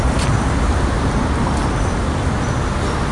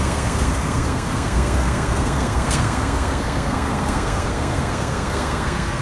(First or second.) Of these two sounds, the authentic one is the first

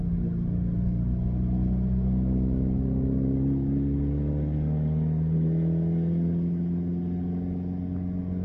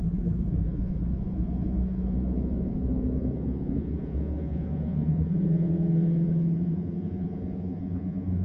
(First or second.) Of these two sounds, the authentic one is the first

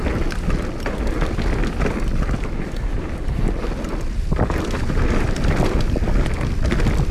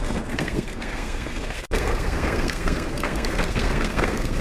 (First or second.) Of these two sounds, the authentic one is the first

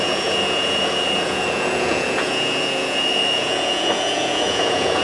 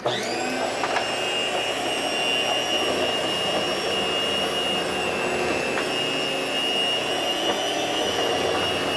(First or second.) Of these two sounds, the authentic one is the second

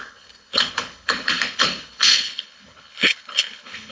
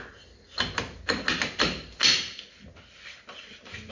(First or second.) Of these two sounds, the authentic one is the second